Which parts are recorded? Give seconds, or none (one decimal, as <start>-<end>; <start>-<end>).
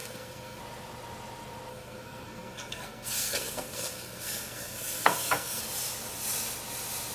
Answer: 0.6-1.7; 5.6-7.1